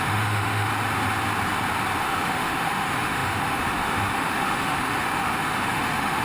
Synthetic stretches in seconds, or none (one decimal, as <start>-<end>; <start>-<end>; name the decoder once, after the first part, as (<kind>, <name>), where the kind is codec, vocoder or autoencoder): 0.0-0.7 (autoencoder, DAC-VAE); 2.0-6.2